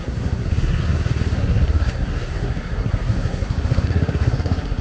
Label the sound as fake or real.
fake